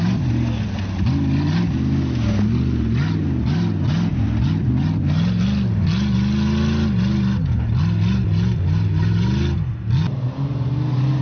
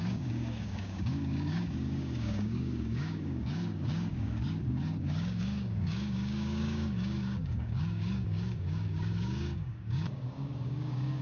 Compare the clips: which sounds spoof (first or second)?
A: second